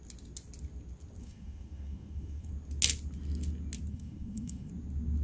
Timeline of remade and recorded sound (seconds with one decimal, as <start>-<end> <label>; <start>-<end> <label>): 0.0-1.2 recorded; 1.2-2.5 remade; 2.5-3.9 recorded; 3.9-4.7 remade; 4.7-5.2 recorded